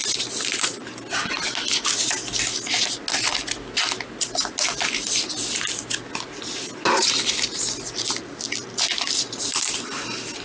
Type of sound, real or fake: real